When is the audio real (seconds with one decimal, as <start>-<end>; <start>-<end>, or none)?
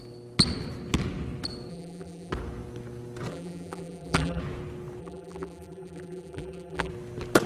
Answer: 0.0-1.7; 2.3-3.3; 4.4-5.0; 6.9-7.5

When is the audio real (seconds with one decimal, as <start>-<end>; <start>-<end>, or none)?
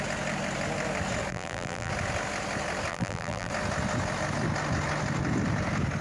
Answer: 0.0-1.3; 1.9-2.9; 3.5-6.0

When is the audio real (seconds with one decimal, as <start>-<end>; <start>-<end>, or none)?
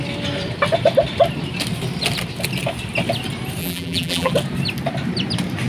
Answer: 0.0-3.6; 4.3-5.7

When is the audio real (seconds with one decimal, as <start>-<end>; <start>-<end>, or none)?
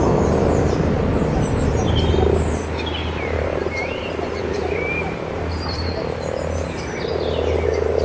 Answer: 0.0-3.0; 4.0-4.4; 6.0-8.0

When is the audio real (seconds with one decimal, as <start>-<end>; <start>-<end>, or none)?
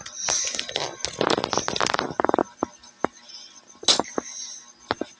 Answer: 0.0-5.2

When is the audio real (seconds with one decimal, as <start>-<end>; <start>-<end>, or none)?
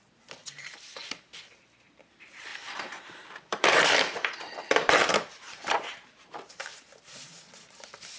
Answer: 0.0-0.4; 1.3-2.5; 6.6-8.2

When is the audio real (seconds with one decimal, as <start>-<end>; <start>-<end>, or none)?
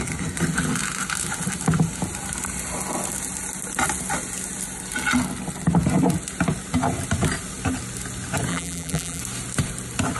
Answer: 0.0-8.5; 9.2-10.2